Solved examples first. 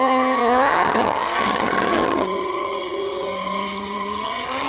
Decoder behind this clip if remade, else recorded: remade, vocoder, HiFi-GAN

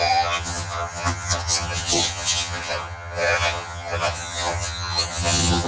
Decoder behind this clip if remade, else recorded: remade, vocoder, HiFi-GAN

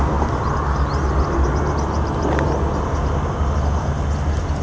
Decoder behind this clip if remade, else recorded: recorded